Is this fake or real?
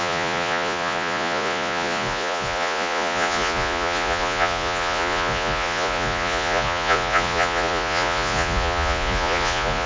fake